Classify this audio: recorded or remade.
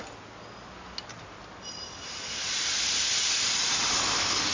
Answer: recorded